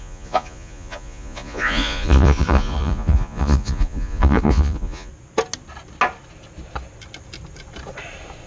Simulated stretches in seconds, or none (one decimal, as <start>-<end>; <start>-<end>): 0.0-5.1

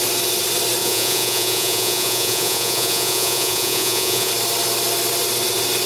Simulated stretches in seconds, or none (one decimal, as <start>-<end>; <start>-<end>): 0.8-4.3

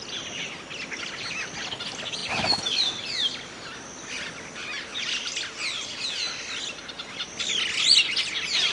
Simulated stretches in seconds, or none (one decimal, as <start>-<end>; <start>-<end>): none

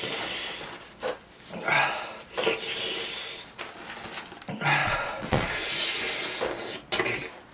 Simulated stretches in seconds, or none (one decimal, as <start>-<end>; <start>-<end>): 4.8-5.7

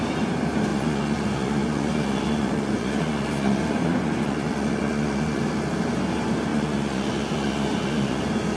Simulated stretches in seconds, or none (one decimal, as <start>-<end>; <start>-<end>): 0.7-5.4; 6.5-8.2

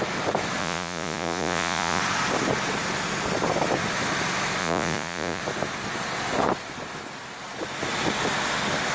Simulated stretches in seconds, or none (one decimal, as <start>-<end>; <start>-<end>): 0.6-2.0; 4.6-5.4